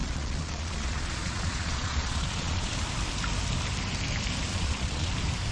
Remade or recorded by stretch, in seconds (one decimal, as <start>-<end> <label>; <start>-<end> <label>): 0.0-2.7 remade; 2.7-4.5 recorded; 4.5-5.1 remade; 5.1-5.5 recorded